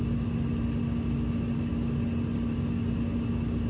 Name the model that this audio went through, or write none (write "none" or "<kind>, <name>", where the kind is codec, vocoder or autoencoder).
none